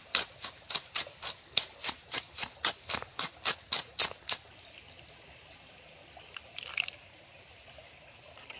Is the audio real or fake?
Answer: real